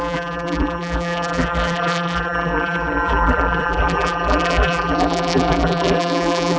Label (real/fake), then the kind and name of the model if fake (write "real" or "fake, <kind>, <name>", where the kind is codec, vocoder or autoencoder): fake, vocoder, BigVGAN v2